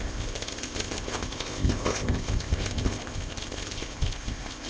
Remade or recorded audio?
remade